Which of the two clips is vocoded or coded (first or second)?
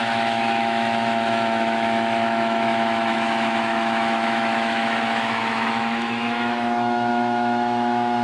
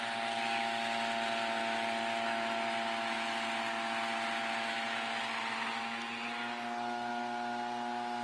first